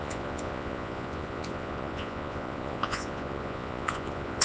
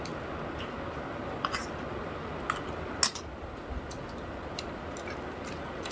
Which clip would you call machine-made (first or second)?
first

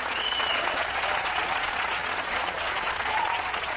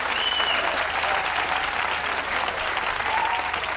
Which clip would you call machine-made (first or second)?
first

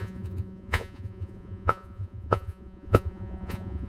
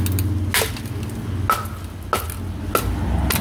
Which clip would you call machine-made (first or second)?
first